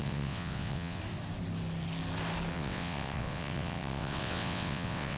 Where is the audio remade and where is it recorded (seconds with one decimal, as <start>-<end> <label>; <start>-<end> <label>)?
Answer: 0.0-1.0 remade; 1.0-2.5 recorded; 2.5-5.2 remade